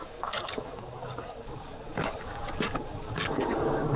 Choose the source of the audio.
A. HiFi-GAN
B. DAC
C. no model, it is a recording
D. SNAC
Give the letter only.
B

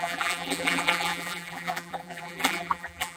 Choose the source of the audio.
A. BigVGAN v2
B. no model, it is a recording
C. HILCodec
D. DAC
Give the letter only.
A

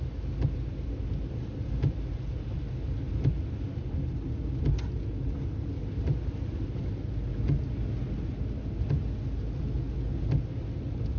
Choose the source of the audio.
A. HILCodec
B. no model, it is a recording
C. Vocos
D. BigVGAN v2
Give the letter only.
B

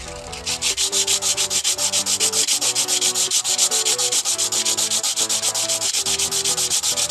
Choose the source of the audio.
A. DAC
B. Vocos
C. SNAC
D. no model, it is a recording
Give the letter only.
D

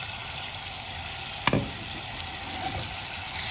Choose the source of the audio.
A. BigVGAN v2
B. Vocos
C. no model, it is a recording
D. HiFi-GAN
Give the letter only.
C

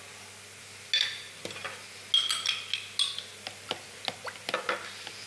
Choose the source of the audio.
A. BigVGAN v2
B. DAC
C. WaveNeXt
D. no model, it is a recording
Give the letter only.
D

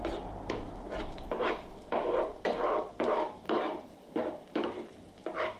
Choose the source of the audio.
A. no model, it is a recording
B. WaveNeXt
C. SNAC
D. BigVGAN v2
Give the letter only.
D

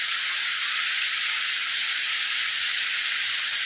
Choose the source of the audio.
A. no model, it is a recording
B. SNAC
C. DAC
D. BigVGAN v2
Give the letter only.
A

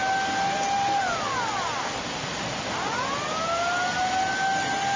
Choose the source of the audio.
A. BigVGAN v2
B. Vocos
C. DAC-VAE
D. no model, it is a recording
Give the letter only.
D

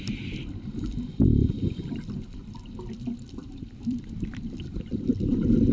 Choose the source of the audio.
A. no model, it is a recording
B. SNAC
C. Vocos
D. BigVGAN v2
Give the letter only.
D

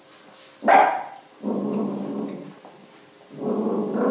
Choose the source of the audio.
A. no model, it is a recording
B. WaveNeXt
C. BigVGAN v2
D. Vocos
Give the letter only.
A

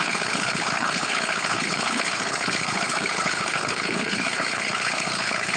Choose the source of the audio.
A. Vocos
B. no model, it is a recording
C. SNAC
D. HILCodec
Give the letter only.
D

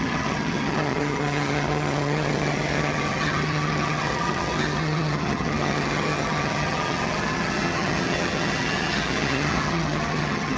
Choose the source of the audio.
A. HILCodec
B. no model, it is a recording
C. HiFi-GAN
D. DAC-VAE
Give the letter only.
C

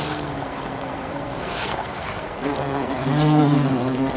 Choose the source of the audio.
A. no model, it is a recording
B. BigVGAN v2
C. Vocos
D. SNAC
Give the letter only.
D